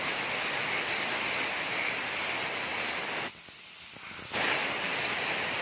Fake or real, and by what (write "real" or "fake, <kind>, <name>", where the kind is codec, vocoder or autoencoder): real